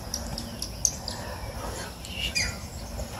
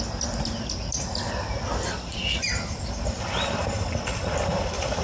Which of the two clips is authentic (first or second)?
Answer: first